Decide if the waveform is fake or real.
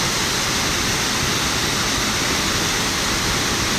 real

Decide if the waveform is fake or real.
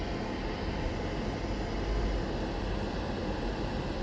real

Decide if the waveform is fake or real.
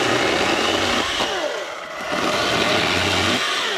real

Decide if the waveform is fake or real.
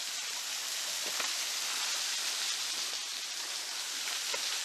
real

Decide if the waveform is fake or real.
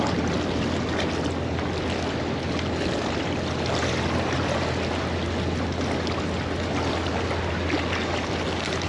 real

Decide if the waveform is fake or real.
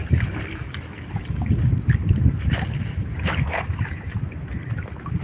real